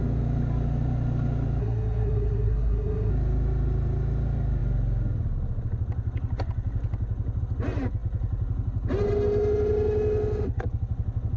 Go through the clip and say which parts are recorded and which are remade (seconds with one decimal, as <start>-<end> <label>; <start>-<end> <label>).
0.0-1.6 recorded; 1.6-3.1 remade; 3.1-11.4 recorded